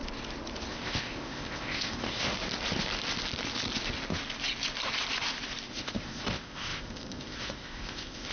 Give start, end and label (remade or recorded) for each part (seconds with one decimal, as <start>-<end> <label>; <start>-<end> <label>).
0.0-0.7 recorded; 0.7-2.3 remade; 2.3-5.7 recorded; 5.7-8.3 remade